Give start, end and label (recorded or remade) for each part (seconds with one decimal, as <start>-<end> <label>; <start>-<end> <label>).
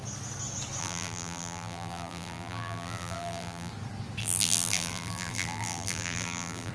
0.0-0.8 recorded; 0.8-3.7 remade; 3.7-4.2 recorded; 4.2-6.7 remade